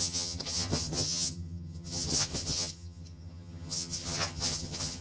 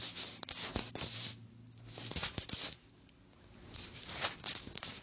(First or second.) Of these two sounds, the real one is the second